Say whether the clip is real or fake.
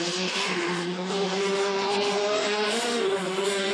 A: fake